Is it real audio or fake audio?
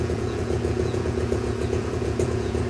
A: fake